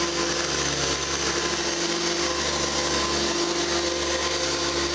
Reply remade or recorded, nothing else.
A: recorded